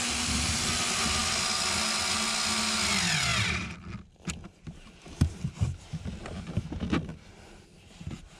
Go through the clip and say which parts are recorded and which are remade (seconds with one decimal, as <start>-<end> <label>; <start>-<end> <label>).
0.0-8.4 recorded